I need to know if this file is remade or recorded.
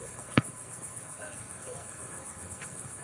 remade